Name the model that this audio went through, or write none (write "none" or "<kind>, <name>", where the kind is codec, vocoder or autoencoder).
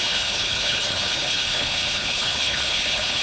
codec, HILCodec